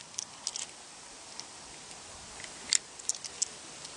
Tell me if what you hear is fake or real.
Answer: real